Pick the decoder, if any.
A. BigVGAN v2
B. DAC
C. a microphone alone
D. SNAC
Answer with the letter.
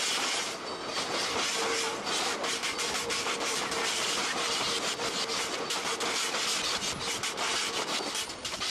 C